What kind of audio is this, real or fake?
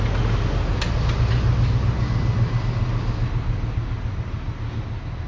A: real